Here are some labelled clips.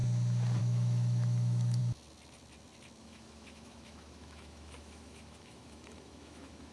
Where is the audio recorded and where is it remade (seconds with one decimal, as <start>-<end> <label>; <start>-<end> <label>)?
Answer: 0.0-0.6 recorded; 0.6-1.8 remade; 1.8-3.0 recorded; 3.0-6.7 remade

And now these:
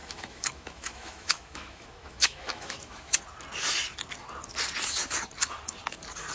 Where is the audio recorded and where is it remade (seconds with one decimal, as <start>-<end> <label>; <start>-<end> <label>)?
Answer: 0.0-3.2 remade; 3.2-6.3 recorded

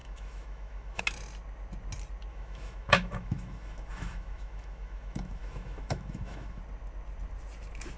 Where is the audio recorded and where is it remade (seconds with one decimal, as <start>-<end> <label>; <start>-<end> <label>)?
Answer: 0.0-1.0 remade; 1.0-2.3 recorded; 2.3-6.6 remade; 6.6-8.0 recorded